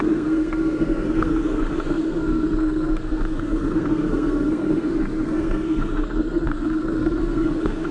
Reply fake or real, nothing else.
fake